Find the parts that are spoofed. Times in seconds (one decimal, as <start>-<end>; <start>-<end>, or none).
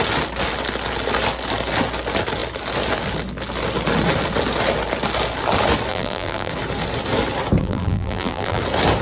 5.9-6.5; 7.6-8.6